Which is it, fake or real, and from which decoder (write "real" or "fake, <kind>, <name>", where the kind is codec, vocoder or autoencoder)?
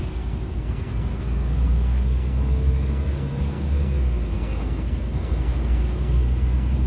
fake, codec, SNAC